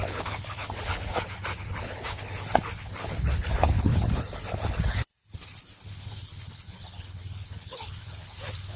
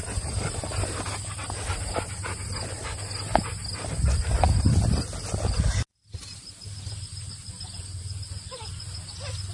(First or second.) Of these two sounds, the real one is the second